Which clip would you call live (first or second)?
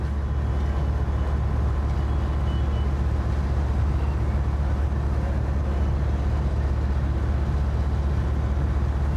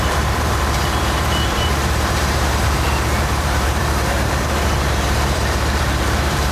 first